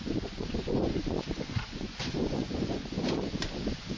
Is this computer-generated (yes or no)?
yes